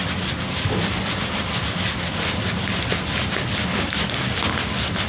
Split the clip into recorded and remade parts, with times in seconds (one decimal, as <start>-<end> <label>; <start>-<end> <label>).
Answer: 0.0-5.1 recorded